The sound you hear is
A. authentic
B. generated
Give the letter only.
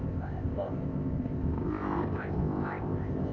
B